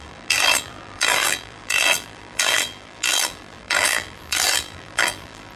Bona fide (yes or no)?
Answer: no